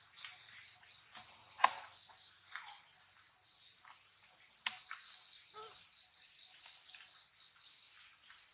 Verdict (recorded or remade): recorded